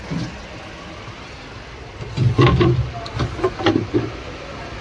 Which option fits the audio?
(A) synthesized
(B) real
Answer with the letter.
B